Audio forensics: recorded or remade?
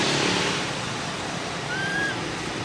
recorded